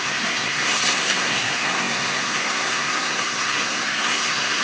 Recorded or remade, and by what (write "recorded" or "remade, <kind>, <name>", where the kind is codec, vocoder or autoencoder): remade, codec, SNAC